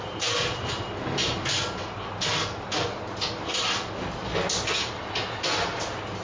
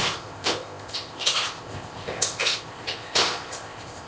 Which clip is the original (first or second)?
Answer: first